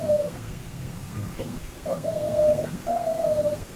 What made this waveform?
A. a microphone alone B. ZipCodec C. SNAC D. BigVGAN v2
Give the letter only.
C